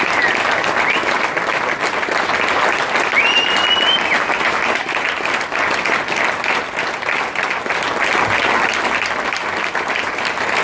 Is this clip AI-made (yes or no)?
no